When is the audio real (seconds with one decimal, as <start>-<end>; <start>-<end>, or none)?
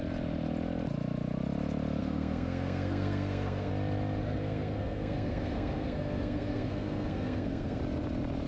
0.0-2.0; 3.7-4.2; 7.8-8.5